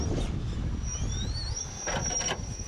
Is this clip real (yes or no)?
yes